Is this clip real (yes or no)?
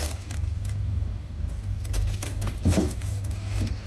no